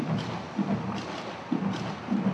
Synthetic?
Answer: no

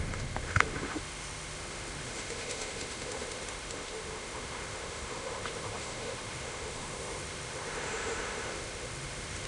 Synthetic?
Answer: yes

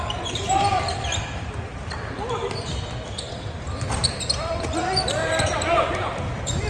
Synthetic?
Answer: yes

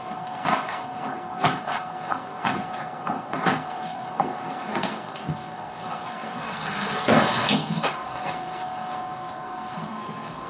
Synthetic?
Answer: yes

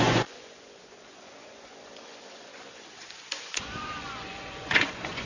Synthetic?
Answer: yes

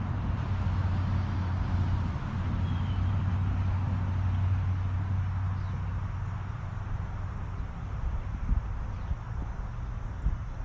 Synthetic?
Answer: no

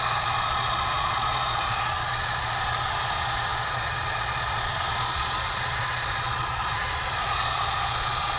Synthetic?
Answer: yes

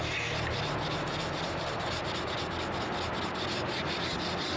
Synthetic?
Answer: no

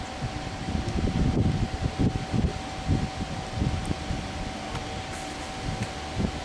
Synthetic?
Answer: no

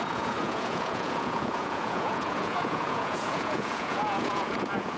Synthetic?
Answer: yes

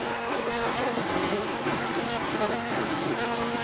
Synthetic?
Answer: yes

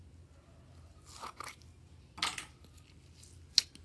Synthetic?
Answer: no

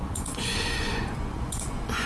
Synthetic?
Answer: yes